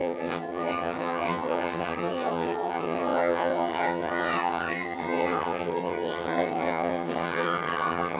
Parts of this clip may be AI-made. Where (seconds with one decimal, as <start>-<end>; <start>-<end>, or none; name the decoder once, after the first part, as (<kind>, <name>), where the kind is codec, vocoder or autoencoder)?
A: 0.0-8.2 (vocoder, HiFi-GAN)